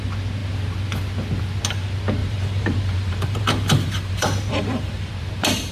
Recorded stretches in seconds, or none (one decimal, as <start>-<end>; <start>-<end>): 0.0-2.2; 5.1-5.7